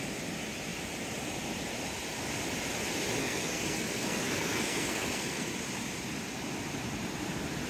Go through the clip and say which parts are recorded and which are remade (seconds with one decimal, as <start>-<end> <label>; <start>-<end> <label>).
0.0-3.2 recorded; 3.2-5.5 remade; 5.5-7.7 recorded